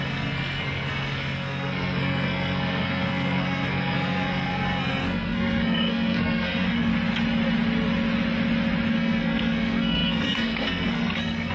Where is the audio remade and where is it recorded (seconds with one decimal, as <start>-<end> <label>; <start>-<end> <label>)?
0.0-6.9 remade; 6.9-8.9 recorded; 8.9-11.5 remade